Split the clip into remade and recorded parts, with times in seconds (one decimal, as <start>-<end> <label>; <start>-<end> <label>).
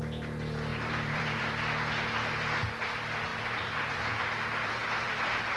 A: 0.0-0.7 recorded; 0.7-1.5 remade; 1.5-3.3 recorded; 3.3-4.1 remade; 4.1-4.6 recorded; 4.6-5.6 remade